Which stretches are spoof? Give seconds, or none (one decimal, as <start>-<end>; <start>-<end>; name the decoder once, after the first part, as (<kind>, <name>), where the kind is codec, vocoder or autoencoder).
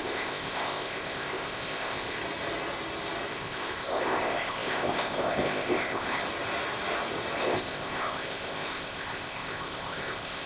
0.0-2.2 (codec, ZipCodec); 3.3-6.2; 7.4-10.5